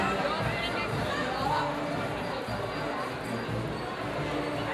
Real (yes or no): yes